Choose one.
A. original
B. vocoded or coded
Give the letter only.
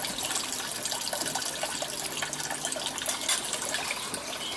A